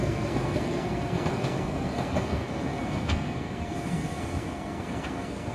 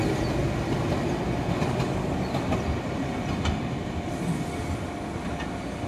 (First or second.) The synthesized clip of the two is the first